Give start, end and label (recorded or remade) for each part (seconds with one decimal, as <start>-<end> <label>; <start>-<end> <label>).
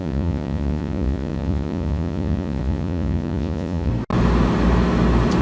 0.0-3.9 remade; 3.9-5.4 recorded